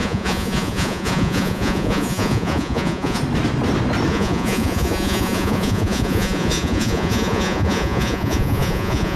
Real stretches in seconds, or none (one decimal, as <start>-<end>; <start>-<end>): 3.2-4.1